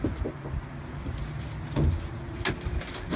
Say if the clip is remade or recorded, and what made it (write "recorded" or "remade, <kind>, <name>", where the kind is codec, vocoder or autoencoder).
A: recorded